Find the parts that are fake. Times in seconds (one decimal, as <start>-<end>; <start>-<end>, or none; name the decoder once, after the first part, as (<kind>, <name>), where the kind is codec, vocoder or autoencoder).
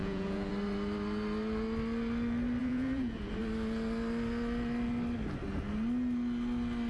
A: 0.0-0.5 (vocoder, Vocos); 2.6-3.4